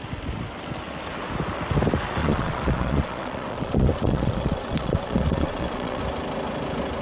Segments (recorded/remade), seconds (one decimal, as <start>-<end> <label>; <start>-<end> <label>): 0.0-2.2 recorded; 2.2-6.0 remade; 6.0-7.0 recorded